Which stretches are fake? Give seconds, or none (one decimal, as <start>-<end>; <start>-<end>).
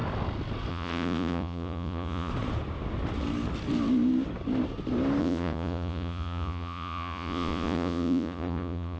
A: 0.7-2.3; 5.2-9.0